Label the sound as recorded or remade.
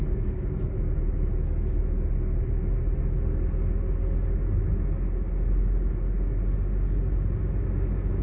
recorded